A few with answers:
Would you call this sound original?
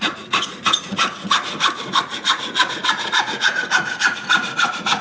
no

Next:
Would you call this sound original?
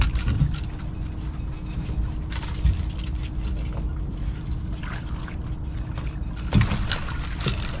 yes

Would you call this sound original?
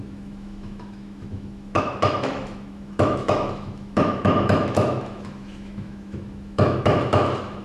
no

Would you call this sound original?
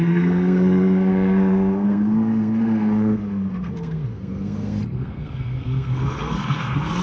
no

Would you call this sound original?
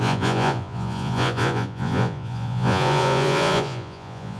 no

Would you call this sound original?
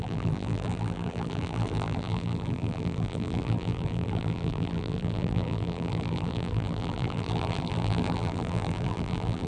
no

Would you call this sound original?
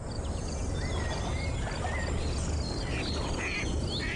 yes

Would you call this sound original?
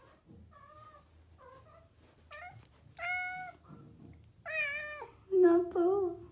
yes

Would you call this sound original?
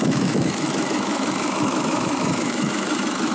no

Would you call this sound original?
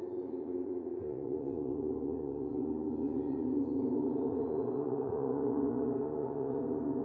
no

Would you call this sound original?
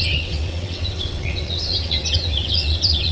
no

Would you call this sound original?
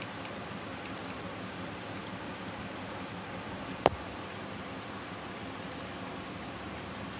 yes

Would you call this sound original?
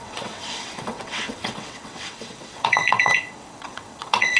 no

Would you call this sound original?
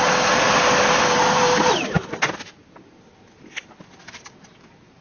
yes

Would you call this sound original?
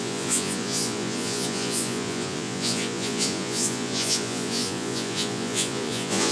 no